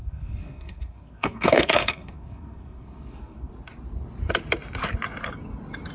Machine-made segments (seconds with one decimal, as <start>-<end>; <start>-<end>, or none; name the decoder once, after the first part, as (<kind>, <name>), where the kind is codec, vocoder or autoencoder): 0.0-3.5 (codec, SNAC)